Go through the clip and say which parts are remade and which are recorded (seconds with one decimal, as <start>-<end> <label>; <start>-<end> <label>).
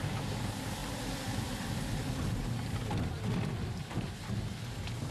0.0-5.1 recorded